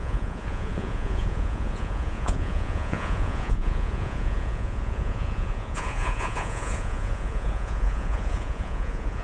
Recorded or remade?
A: remade